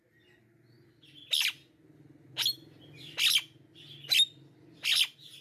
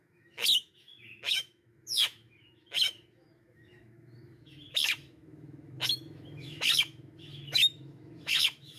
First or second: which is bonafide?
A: first